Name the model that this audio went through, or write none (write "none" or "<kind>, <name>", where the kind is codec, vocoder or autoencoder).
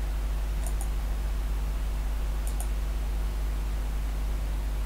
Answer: none